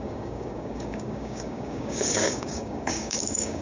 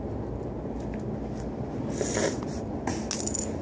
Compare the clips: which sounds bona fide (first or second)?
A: second